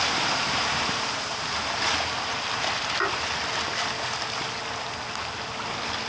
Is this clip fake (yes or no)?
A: no